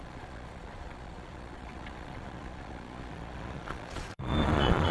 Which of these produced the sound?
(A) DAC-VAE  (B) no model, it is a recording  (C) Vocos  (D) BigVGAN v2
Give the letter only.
C